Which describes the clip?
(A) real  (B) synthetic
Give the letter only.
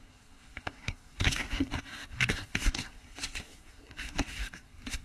B